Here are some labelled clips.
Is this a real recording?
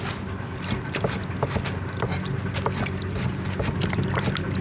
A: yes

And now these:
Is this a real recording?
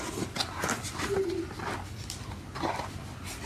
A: yes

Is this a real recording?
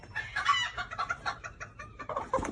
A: no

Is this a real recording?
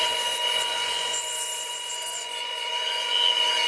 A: no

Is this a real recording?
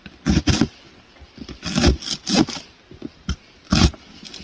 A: yes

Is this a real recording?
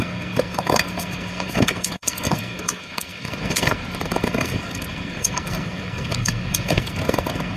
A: no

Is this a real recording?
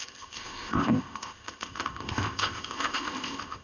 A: no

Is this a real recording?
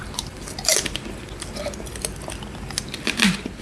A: yes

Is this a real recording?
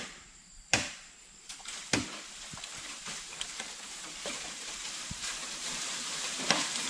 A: no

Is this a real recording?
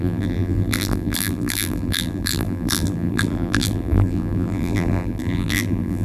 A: no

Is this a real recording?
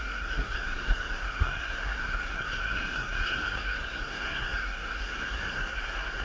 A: no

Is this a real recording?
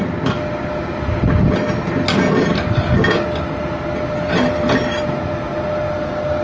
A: yes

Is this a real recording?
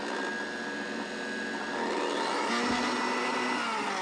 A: yes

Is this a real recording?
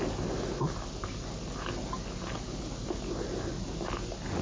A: yes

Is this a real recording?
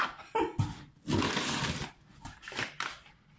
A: yes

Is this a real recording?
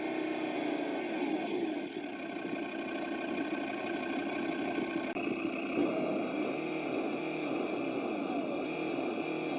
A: yes